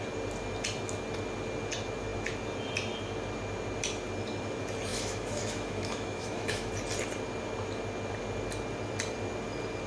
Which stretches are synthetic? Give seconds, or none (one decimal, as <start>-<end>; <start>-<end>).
4.9-6.7